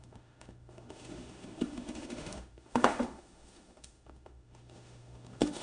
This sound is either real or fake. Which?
fake